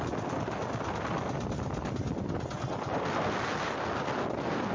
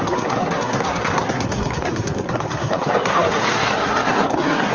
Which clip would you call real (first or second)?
first